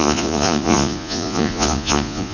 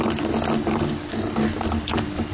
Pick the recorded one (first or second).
second